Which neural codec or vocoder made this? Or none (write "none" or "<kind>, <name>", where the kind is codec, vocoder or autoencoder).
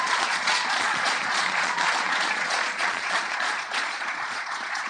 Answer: vocoder, Vocos